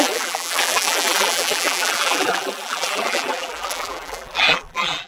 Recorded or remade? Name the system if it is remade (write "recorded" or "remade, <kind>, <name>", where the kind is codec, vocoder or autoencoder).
remade, vocoder, BigVGAN v2